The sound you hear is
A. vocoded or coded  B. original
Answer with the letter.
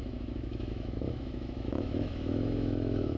A